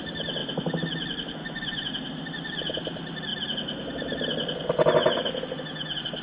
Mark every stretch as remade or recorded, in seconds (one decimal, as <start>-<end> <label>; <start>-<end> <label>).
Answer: 0.0-0.4 recorded; 0.4-1.4 remade; 1.4-6.2 recorded